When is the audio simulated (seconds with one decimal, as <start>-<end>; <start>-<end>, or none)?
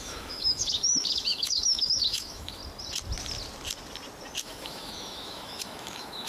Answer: 0.0-2.6; 4.4-6.3